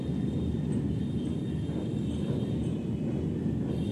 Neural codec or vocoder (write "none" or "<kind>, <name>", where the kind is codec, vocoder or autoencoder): none